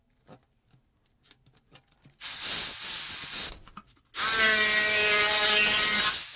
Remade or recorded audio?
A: recorded